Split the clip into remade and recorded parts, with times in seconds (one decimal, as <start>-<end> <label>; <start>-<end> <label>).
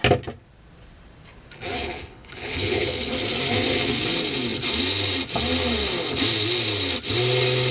0.0-1.8 recorded; 1.8-3.1 remade; 3.1-7.7 recorded